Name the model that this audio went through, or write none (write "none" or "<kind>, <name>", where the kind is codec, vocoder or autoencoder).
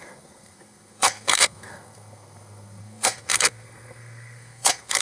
codec, SNAC